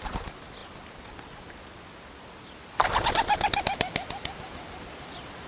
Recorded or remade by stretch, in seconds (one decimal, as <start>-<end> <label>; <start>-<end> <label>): 0.0-5.5 recorded